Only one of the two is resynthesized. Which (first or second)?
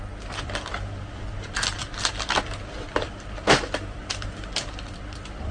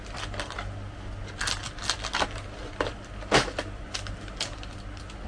first